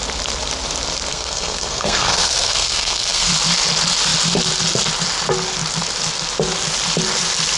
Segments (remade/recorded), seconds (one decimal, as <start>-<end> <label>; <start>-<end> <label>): 0.0-1.1 recorded; 1.1-3.3 remade; 3.3-7.6 recorded